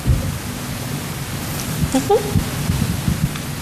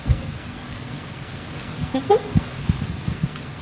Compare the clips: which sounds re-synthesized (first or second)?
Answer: second